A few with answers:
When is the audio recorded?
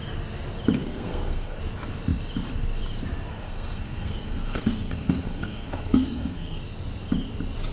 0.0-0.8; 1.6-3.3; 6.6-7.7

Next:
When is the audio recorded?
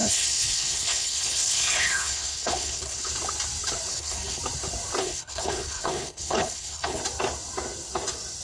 3.1-3.9; 4.4-5.0; 7.0-8.4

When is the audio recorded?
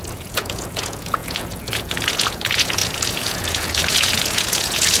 none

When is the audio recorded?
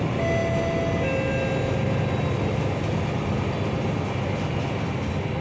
0.0-5.4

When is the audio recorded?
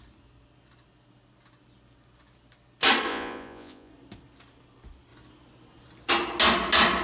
0.0-3.1; 3.9-7.0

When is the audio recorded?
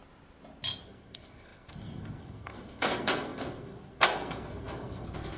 0.0-0.8